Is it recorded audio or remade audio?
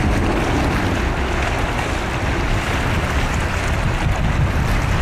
recorded